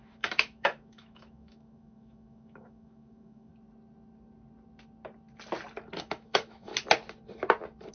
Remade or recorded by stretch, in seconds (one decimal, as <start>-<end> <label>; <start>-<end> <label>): 0.0-3.5 remade; 3.5-6.0 recorded; 6.0-6.7 remade; 6.7-7.9 recorded